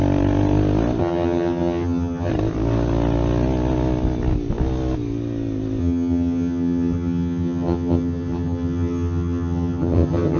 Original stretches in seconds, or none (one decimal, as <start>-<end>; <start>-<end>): 0.0-1.0; 2.3-5.8